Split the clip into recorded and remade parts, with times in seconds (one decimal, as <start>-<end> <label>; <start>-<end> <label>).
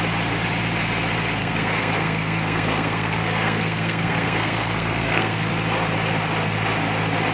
0.0-1.4 recorded; 1.4-5.5 remade; 5.5-7.3 recorded